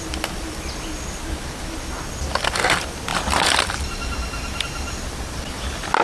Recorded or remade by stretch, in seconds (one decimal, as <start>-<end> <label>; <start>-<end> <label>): 0.0-6.0 recorded